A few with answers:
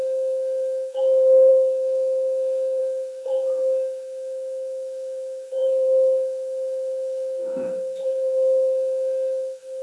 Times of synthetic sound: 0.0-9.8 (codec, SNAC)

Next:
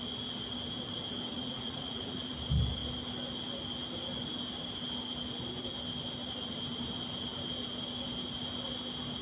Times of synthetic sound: 1.3-2.3 (vocoder, Vocos)

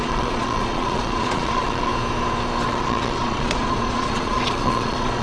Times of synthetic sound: 0.0-1.9 (vocoder, Vocos); 2.7-5.2

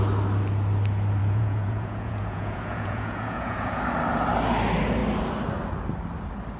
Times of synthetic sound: 1.2-3.8 (vocoder, Vocos)

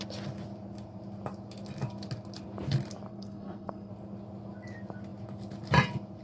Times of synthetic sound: 3.1-3.9 (codec, SNAC)

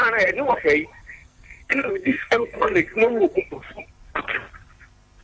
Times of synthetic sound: 1.0-3.4 (codec, SNAC)